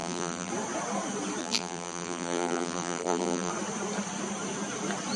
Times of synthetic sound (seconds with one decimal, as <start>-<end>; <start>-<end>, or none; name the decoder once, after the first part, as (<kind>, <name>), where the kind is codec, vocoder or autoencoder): 0.0-0.5 (vocoder, BigVGAN v2); 1.4-3.5